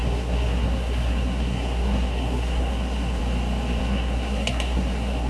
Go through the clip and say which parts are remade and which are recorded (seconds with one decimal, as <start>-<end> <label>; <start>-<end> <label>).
0.0-3.2 remade; 3.2-3.8 recorded; 3.8-5.3 remade